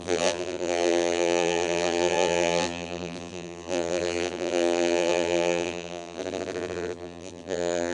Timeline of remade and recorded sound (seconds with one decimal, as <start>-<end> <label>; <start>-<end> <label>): 0.0-7.9 remade